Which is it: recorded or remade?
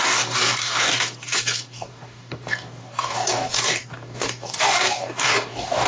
remade